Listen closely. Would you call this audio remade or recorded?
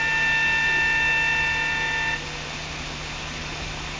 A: recorded